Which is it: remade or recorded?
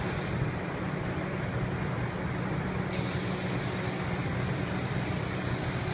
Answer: recorded